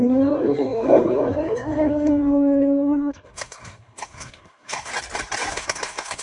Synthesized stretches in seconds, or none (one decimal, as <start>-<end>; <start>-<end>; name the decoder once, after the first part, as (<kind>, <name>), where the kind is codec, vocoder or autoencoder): 0.0-4.9 (codec, SNAC); 5.5-6.2